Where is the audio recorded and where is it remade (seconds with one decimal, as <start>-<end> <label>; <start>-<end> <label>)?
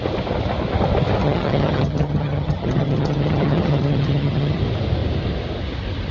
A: 0.0-1.2 recorded; 1.2-4.6 remade; 4.6-6.1 recorded